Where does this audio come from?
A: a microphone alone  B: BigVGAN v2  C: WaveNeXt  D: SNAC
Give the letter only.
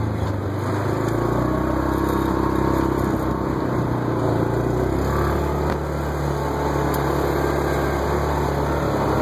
A